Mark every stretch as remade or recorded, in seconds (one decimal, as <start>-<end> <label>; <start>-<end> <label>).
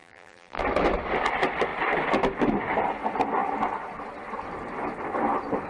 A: 0.0-0.6 remade; 0.6-5.7 recorded